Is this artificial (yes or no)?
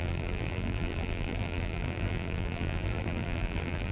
yes